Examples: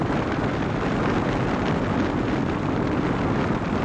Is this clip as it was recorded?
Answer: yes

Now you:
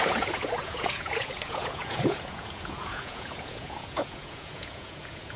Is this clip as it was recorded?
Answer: no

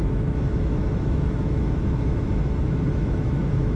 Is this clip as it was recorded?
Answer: no